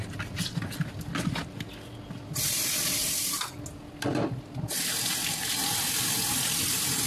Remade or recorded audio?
recorded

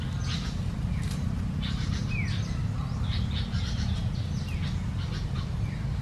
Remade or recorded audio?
recorded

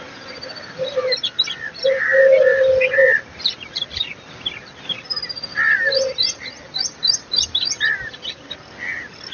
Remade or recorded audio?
recorded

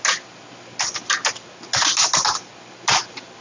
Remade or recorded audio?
recorded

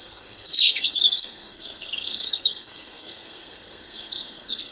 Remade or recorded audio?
remade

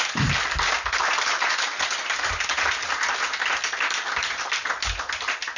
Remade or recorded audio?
recorded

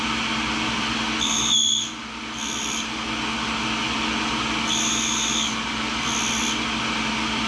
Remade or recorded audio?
recorded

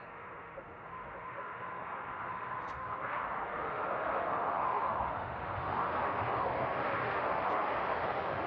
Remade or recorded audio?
remade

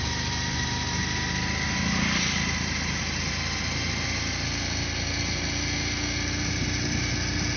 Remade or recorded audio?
recorded